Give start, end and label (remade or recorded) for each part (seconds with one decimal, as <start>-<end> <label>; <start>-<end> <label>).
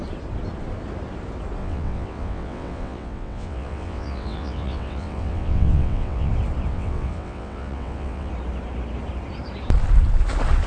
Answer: 0.0-1.6 recorded; 1.6-6.3 remade; 6.3-6.7 recorded; 6.7-8.3 remade; 8.3-10.7 recorded